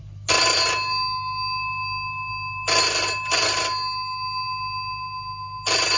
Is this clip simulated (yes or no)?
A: no